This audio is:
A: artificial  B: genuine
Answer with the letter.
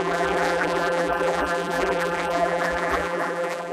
A